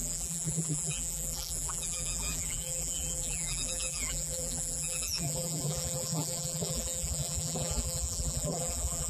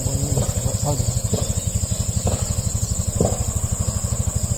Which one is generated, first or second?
first